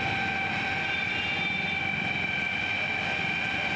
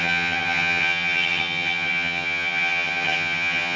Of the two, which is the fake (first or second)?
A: second